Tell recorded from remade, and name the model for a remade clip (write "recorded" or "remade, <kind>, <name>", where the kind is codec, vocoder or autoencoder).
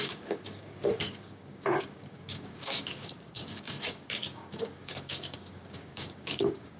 remade, codec, DAC